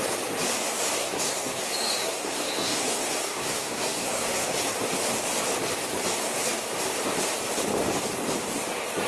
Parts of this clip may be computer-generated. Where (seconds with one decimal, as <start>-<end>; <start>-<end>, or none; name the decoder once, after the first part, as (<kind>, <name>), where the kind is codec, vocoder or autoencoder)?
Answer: 1.0-1.6 (codec, SNAC); 2.0-4.7